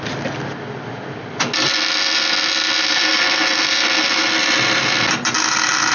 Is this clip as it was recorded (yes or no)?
yes